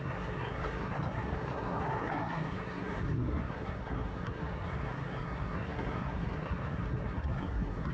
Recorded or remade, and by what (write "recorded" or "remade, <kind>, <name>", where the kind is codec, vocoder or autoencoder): remade, codec, SNAC